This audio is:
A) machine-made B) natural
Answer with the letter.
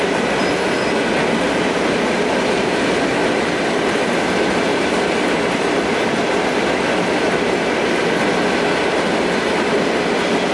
B